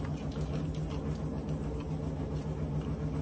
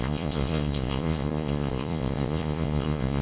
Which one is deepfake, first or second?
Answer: second